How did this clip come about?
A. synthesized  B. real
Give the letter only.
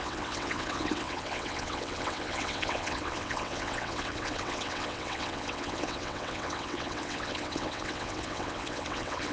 A